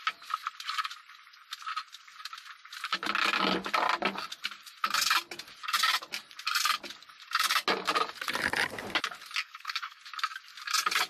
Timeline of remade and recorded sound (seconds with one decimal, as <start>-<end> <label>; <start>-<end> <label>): 0.0-9.4 recorded; 9.4-10.0 remade; 10.0-11.1 recorded